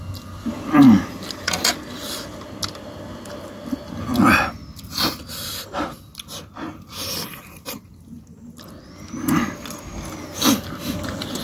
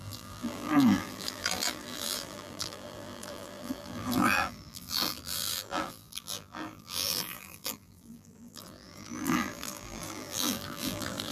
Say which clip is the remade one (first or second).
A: second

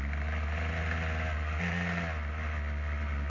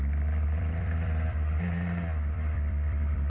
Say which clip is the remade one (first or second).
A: second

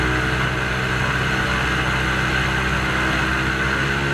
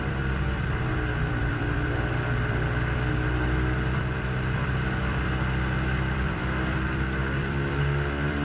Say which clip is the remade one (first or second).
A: second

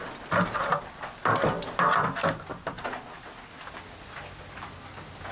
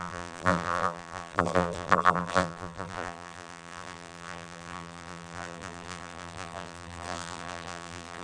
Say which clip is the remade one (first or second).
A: second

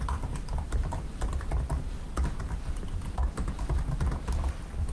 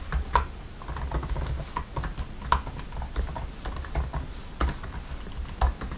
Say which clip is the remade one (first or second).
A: first